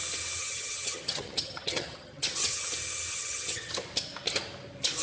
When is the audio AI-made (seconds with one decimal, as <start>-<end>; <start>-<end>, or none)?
0.4-2.7; 3.1-3.7